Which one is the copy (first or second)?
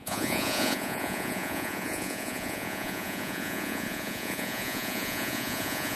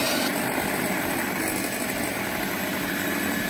first